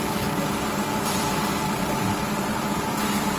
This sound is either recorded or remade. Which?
remade